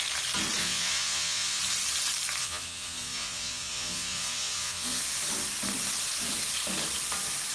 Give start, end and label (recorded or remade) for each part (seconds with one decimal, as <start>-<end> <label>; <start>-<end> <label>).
0.0-0.6 recorded; 0.6-1.6 remade; 1.6-2.4 recorded; 2.4-5.0 remade; 5.0-7.5 recorded